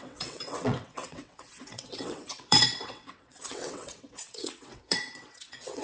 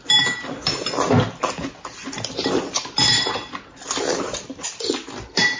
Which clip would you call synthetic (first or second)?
first